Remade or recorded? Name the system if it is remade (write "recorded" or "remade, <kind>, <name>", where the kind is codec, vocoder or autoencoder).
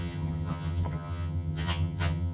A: remade, vocoder, HiFi-GAN